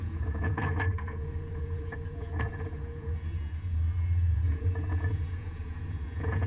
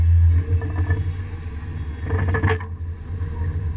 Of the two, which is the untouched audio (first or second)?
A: second